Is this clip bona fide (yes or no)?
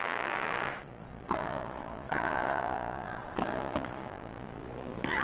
no